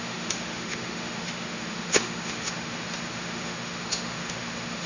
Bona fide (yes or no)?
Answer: no